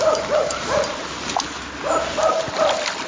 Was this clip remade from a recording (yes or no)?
no